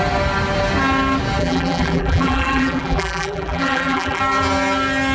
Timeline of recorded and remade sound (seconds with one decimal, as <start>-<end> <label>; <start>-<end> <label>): 0.0-1.4 recorded; 1.4-4.2 remade; 4.2-5.1 recorded